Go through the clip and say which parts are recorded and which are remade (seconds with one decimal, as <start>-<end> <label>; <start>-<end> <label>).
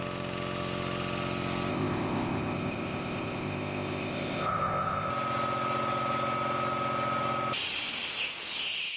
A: 0.0-1.7 recorded; 1.7-5.1 remade; 5.1-9.0 recorded